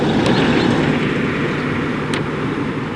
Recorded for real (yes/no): yes